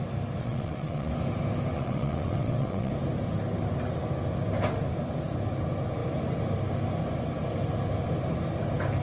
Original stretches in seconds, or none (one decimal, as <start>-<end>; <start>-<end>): 0.0-0.4; 1.1-1.7; 2.9-9.0